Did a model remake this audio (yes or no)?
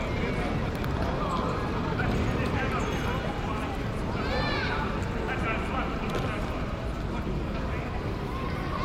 no